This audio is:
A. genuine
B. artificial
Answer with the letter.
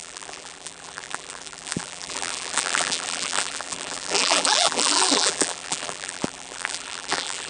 B